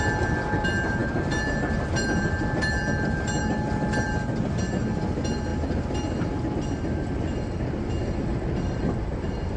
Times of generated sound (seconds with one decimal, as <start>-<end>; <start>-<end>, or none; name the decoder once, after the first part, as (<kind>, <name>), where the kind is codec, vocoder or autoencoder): 1.0-4.5 (vocoder, BigVGAN v2)